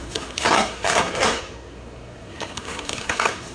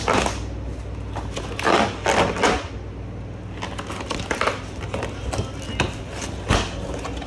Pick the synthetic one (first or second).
first